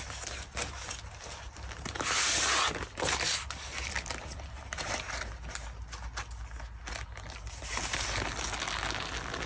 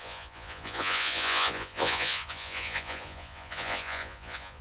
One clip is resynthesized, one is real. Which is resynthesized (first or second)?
second